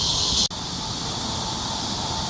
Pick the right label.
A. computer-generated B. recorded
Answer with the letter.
B